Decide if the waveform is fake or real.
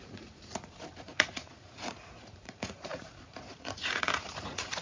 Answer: fake